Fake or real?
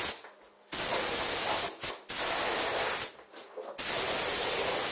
real